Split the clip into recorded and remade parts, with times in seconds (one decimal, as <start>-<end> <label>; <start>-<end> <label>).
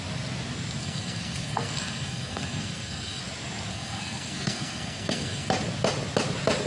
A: 0.0-0.8 recorded; 0.8-3.2 remade; 3.2-3.7 recorded; 3.7-5.5 remade; 5.5-6.7 recorded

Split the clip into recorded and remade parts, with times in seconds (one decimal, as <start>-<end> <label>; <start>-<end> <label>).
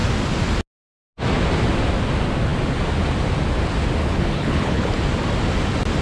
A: 0.0-4.0 recorded; 4.0-4.9 remade; 4.9-6.0 recorded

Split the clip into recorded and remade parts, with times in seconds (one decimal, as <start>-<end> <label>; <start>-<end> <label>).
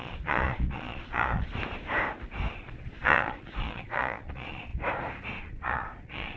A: 0.0-1.5 remade; 1.5-2.5 recorded; 2.5-4.7 remade; 4.7-5.4 recorded; 5.4-6.4 remade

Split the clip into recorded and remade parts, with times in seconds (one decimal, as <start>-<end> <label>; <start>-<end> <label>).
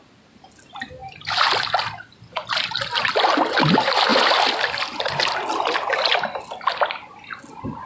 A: 0.0-7.9 recorded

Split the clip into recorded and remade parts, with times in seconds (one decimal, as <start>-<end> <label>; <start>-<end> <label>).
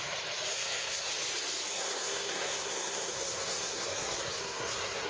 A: 0.0-0.5 recorded; 0.5-1.1 remade; 1.1-1.7 recorded; 1.7-5.1 remade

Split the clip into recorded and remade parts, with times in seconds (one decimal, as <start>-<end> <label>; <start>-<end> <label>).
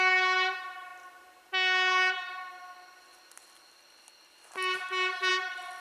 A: 0.0-5.8 recorded